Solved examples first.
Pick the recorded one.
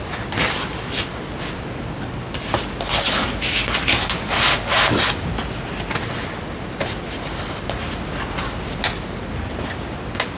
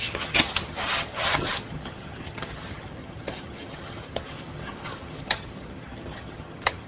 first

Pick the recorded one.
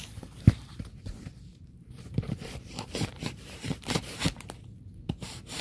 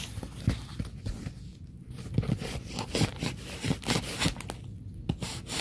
second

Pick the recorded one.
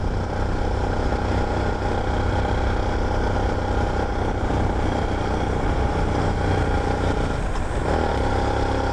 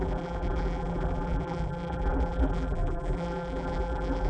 first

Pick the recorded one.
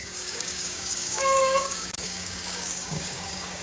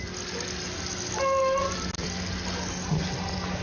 second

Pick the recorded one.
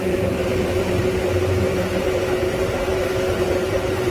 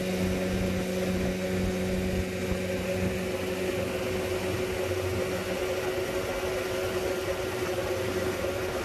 second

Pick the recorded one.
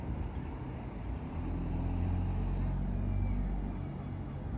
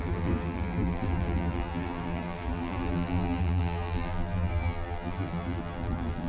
first